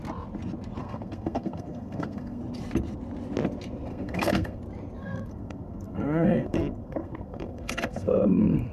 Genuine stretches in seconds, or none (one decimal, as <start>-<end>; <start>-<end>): 0.0-0.8; 2.4-3.9; 4.6-5.0